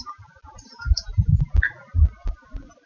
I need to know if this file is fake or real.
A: real